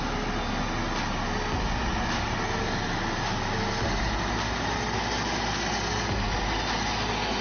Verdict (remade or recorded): recorded